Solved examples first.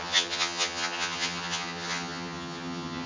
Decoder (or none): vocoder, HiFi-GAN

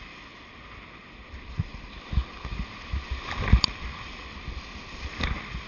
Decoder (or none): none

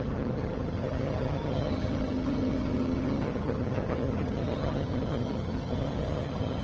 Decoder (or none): vocoder, HiFi-GAN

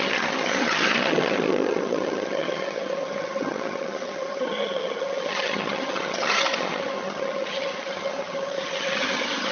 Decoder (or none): vocoder, HiFi-GAN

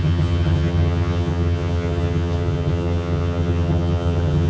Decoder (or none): vocoder, HiFi-GAN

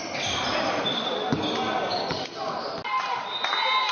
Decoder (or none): none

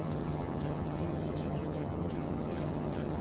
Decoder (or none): vocoder, HiFi-GAN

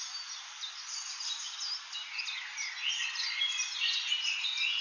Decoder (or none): none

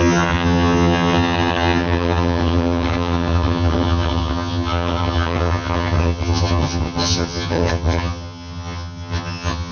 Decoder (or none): vocoder, HiFi-GAN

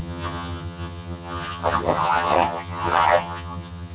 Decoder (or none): vocoder, HiFi-GAN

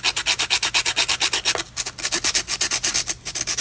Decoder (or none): none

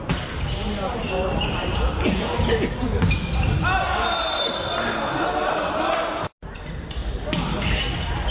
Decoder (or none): none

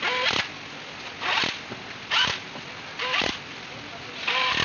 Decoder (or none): none